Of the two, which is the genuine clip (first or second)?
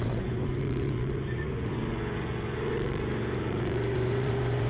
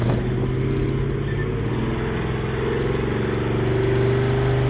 second